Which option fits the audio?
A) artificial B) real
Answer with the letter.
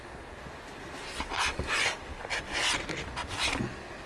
B